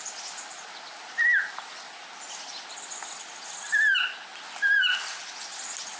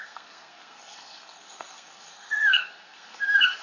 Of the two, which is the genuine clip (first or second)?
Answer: first